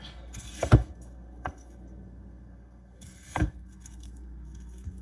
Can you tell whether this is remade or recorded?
remade